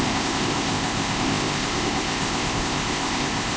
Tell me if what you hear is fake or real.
fake